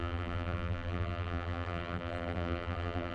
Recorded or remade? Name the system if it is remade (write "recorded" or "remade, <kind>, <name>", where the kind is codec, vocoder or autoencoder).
remade, vocoder, BigVGAN v2